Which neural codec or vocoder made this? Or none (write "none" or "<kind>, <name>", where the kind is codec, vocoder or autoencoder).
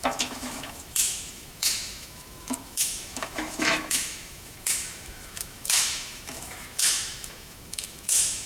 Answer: autoencoder, DAC-VAE